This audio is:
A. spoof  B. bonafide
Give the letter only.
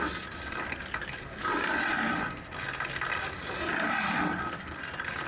B